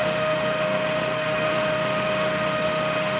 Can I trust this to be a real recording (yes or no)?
no